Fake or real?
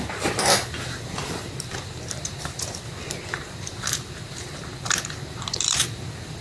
fake